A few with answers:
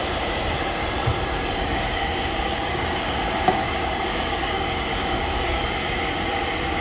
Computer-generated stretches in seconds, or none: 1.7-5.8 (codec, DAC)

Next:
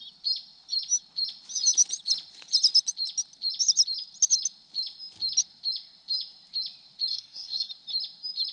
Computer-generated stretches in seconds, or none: 7.1-7.7 (codec, SNAC)